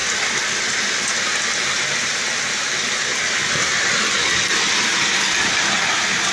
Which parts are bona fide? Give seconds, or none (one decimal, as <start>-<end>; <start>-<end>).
0.0-6.3